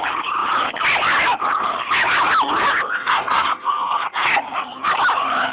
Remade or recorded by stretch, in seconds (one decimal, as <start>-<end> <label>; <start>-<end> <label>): 0.0-2.9 recorded; 2.9-4.4 remade; 4.4-5.5 recorded